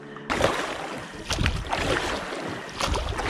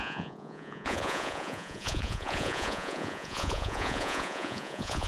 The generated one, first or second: second